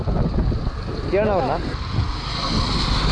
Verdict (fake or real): real